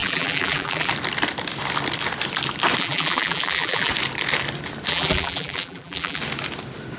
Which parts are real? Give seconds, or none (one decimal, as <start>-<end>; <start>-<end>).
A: 0.9-2.8; 3.9-4.9; 6.2-7.0